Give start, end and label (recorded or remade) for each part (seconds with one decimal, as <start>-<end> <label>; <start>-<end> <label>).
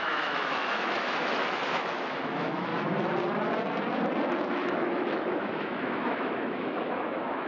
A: 0.0-2.7 remade; 2.7-4.5 recorded; 4.5-7.5 remade